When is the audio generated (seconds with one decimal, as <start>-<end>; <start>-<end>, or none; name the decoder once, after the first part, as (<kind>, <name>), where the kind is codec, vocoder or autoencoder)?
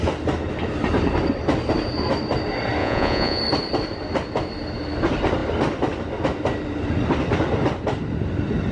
2.8-3.4 (vocoder, Vocos)